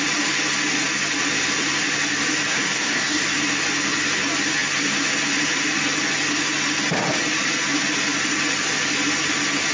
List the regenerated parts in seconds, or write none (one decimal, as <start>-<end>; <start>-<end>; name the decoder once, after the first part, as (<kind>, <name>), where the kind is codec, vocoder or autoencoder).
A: 2.5-3.2 (codec, SNAC)

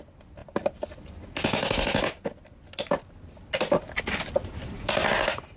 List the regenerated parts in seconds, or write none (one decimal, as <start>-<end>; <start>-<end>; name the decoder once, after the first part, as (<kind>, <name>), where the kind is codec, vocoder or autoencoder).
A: none

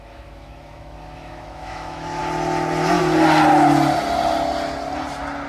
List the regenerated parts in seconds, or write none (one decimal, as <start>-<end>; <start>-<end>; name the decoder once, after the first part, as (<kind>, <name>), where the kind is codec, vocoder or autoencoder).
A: 0.0-2.2 (autoencoder, DAC-VAE)

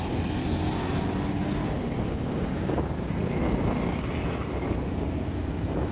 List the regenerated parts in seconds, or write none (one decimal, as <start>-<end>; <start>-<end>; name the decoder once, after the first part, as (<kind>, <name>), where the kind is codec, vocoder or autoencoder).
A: 1.8-2.7 (codec, DAC)

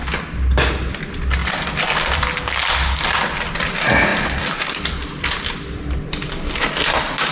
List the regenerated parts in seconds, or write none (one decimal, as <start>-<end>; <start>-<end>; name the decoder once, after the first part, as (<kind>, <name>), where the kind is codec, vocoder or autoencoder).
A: 1.4-2.2 (vocoder, BigVGAN v2); 4.1-6.5

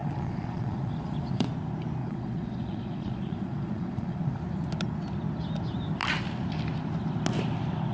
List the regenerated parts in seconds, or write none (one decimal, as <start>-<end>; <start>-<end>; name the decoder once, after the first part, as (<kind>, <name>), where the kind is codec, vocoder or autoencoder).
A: 0.0-1.5 (vocoder, Vocos); 2.0-4.4